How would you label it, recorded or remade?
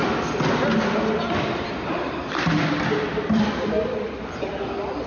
recorded